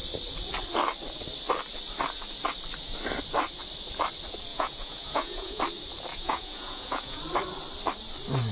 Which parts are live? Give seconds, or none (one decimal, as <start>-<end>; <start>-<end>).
0.0-4.5; 5.6-6.1; 7.2-8.5